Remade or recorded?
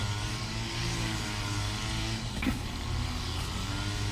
remade